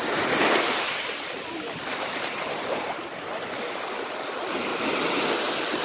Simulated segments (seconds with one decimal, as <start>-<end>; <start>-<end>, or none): none